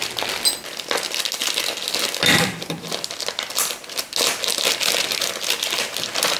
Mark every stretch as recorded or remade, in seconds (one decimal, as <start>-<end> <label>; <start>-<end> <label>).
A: 0.0-6.4 recorded